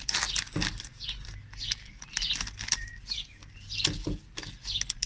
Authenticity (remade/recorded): recorded